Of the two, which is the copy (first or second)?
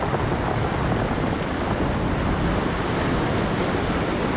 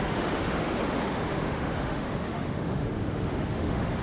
second